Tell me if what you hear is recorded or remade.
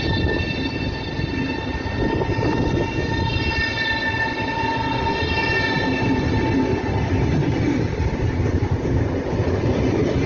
recorded